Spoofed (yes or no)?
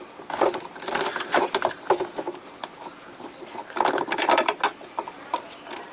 no